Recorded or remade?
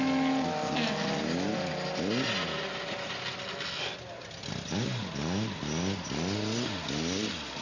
recorded